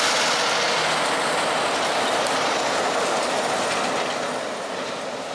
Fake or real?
real